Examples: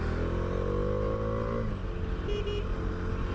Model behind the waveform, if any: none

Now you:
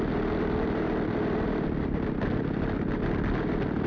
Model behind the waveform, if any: none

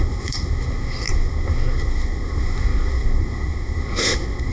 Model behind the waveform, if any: codec, SNAC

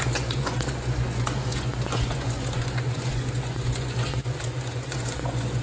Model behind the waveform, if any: vocoder, Vocos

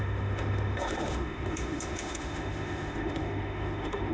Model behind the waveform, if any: autoencoder, DAC-VAE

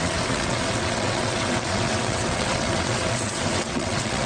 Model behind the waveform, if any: vocoder, WaveNeXt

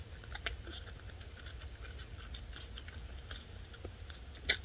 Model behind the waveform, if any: none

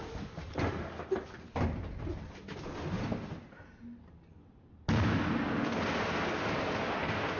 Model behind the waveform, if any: none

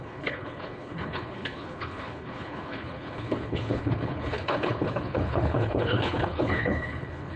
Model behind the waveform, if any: codec, HILCodec